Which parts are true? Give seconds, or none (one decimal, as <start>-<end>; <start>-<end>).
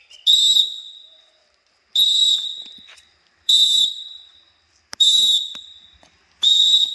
0.0-2.2; 3.9-6.9